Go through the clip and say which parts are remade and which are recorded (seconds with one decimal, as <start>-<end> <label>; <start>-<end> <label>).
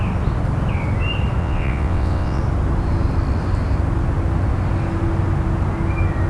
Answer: 0.0-1.4 recorded; 1.4-2.4 remade; 2.4-6.3 recorded